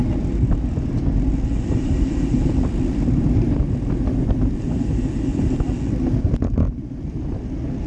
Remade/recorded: recorded